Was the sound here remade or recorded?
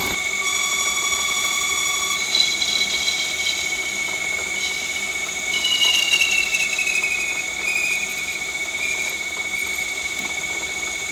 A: recorded